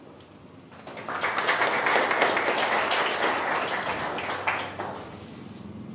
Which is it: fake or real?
real